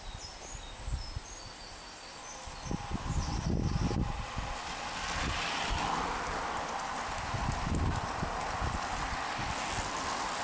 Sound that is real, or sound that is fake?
real